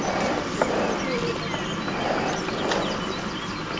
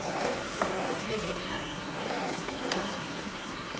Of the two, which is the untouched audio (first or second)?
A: first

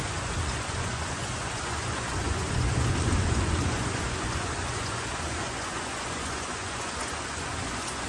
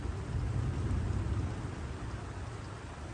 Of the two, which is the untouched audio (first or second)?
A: second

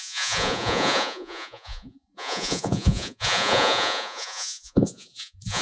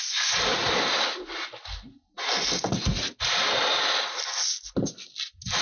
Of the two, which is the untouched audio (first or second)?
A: second